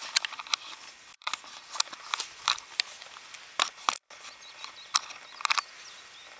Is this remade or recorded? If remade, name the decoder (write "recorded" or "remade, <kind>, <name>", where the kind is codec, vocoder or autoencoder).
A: recorded